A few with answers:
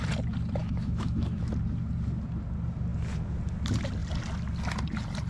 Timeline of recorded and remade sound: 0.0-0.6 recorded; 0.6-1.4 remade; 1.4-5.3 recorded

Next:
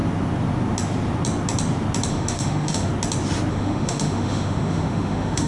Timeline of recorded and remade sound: 0.0-2.1 recorded; 2.1-2.9 remade; 2.9-3.5 recorded; 3.5-5.5 remade

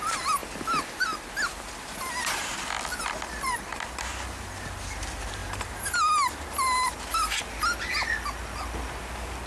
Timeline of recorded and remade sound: 0.0-9.5 recorded

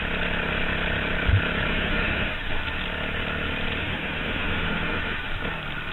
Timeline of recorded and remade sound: 0.0-1.7 recorded; 1.7-2.6 remade; 2.6-3.8 recorded; 3.8-5.3 remade; 5.3-5.9 recorded